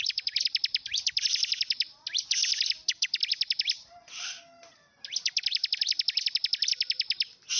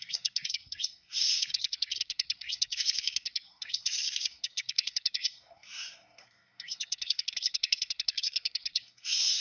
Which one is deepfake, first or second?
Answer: second